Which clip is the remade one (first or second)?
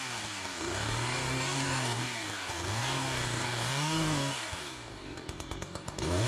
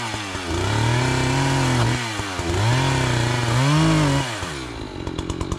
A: first